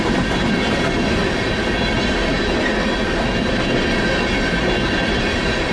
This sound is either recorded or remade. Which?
recorded